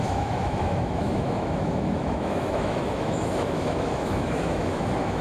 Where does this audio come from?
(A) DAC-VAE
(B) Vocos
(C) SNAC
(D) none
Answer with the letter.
A